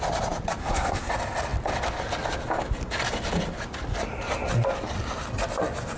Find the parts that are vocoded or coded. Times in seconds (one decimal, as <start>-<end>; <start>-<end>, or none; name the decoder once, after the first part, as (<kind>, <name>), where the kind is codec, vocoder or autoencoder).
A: 0.6-1.1 (codec, SNAC)